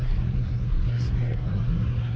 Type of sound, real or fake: fake